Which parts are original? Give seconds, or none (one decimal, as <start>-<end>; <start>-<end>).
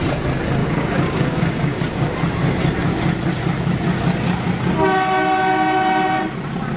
0.0-0.6; 1.8-6.8